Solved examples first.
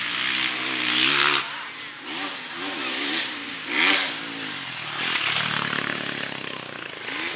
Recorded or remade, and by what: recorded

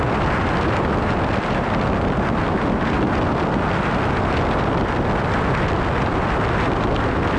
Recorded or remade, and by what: recorded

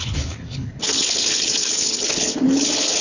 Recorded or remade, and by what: remade, codec, HILCodec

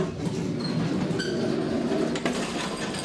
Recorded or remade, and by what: recorded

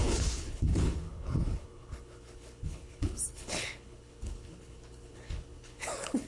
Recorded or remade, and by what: remade, codec, HILCodec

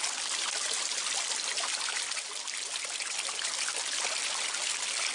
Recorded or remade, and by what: recorded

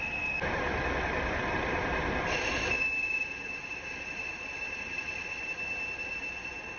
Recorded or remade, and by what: recorded